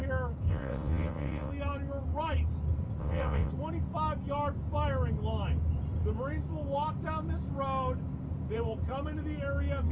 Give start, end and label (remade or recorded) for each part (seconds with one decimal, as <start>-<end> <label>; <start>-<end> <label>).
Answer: 0.0-0.5 recorded; 0.5-1.5 remade; 1.5-3.0 recorded; 3.0-3.5 remade; 3.5-9.9 recorded